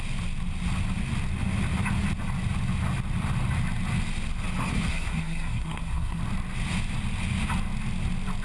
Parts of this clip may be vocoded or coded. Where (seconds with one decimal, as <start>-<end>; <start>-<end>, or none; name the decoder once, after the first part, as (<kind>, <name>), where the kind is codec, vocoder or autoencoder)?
4.7-6.2 (codec, SNAC)